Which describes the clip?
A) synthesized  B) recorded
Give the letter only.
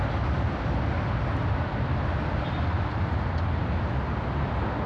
B